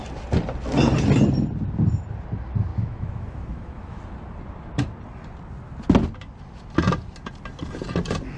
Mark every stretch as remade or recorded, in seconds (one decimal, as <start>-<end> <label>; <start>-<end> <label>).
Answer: 0.0-2.7 recorded; 2.7-4.0 remade; 4.0-8.4 recorded